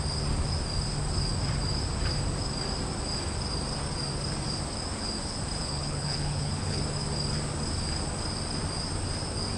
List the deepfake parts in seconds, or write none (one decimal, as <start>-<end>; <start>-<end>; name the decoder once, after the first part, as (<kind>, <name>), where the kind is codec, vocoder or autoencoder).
5.6-6.8 (codec, HILCodec)